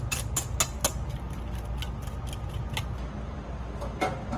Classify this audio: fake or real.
real